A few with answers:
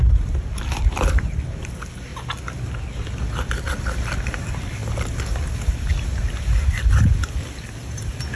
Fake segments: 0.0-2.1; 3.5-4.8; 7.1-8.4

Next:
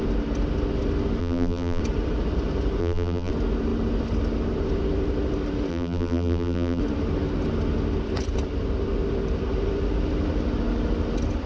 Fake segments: 1.2-1.8; 2.8-3.3; 5.7-6.8